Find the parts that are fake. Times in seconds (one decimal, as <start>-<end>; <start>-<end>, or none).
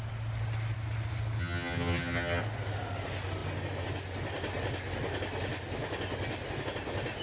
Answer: 1.4-2.4